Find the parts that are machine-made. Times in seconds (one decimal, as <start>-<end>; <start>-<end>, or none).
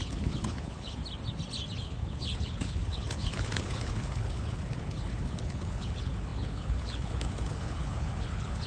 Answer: 0.0-1.0; 1.8-8.7